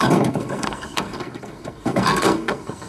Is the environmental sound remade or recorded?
remade